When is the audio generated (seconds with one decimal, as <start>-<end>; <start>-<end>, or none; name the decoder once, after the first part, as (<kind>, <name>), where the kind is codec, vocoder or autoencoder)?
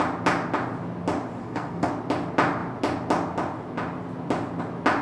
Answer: 1.4-1.9 (codec, SNAC)